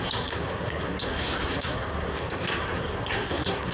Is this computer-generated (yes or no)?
yes